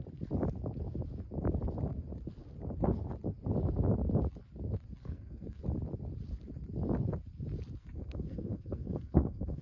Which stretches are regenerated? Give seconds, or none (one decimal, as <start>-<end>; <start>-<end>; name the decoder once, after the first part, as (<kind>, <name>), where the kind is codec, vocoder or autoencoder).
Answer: 5.0-5.6 (codec, SNAC); 7.8-9.6